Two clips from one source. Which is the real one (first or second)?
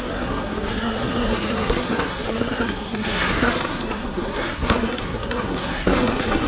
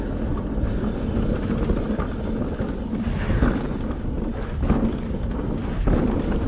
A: second